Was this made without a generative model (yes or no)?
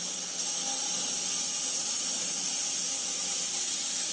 yes